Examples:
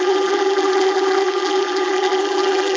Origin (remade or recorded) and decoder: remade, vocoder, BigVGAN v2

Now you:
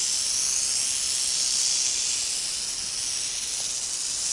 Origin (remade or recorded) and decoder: recorded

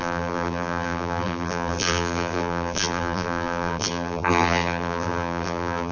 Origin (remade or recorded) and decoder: remade, vocoder, BigVGAN v2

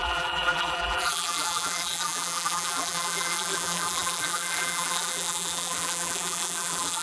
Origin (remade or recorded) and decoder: remade, vocoder, BigVGAN v2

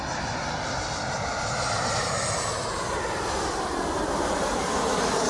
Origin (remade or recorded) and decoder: recorded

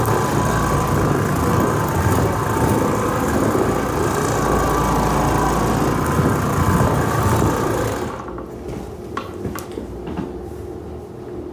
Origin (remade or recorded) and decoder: recorded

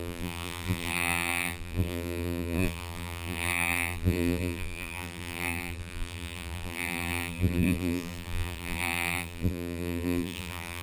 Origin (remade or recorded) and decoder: remade, vocoder, BigVGAN v2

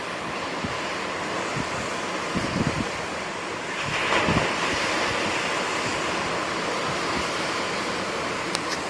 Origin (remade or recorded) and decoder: recorded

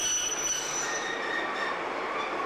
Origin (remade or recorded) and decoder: recorded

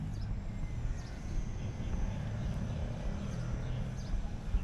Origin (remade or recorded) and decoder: recorded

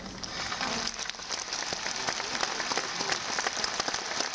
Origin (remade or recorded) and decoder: recorded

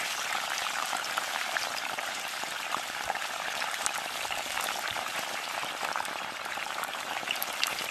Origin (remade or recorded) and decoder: remade, vocoder, BigVGAN v2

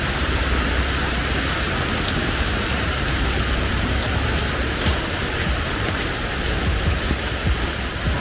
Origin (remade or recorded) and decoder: remade, vocoder, BigVGAN v2